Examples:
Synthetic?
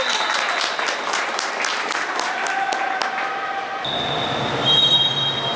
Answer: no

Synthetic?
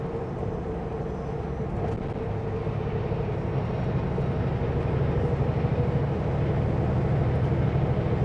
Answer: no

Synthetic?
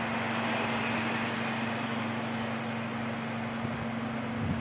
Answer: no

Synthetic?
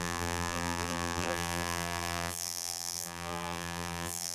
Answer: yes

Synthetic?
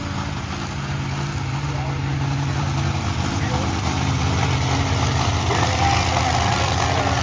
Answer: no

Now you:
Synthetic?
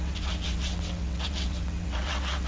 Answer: yes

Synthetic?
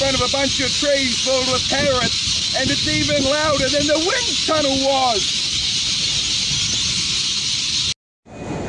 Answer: no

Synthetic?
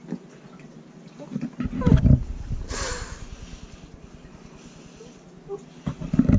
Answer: no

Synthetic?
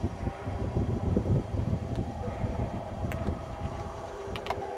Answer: yes